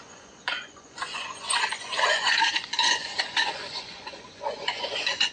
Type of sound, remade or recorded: remade